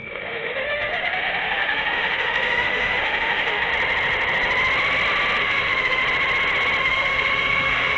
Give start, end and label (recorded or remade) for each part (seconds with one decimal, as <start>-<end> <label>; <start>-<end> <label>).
0.0-3.7 remade; 3.7-5.4 recorded; 5.4-6.0 remade; 6.0-6.8 recorded; 6.8-8.0 remade